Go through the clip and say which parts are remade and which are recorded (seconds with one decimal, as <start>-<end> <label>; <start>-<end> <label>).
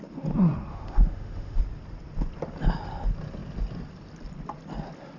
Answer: 0.0-0.7 recorded; 0.7-1.6 remade; 1.6-5.2 recorded